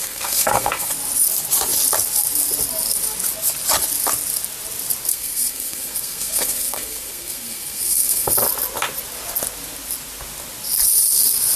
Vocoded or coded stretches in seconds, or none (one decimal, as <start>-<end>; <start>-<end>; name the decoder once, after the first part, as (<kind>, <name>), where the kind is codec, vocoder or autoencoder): 0.0-0.9 (codec, SNAC); 5.1-8.3